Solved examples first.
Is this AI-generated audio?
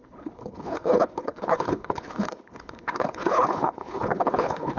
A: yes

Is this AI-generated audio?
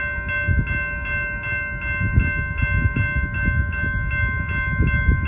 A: no